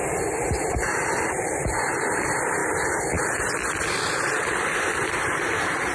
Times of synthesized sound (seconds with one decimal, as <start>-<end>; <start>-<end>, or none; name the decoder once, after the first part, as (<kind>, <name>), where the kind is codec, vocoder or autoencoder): none